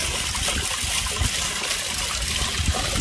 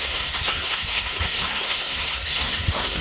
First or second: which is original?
first